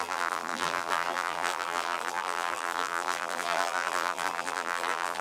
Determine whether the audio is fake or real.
fake